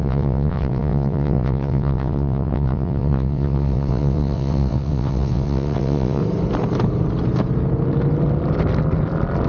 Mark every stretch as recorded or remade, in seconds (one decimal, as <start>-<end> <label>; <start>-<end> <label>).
0.0-6.2 remade; 6.2-9.5 recorded